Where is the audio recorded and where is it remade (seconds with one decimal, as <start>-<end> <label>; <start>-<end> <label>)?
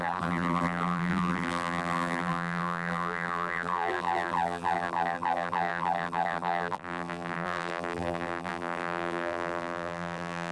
0.0-10.5 remade